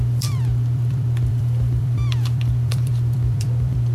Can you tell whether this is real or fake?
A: fake